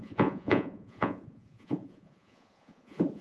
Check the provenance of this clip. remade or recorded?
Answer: remade